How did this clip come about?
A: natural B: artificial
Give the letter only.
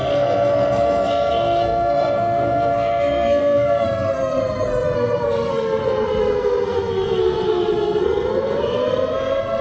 B